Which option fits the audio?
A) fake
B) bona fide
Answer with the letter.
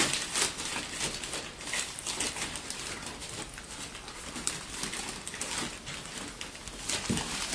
B